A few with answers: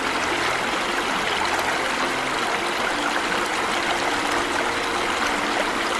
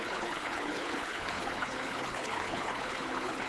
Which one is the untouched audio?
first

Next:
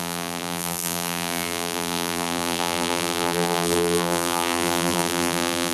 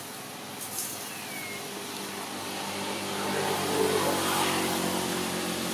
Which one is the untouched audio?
second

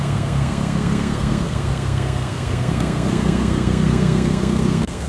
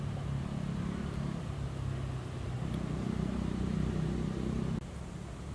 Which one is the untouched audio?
second